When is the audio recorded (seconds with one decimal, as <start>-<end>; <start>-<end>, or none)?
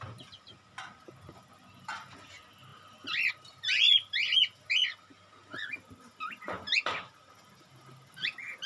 0.0-8.7